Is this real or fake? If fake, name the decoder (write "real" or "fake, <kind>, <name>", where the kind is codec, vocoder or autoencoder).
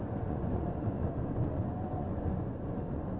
fake, vocoder, Vocos